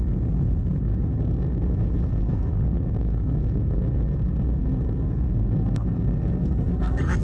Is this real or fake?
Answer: fake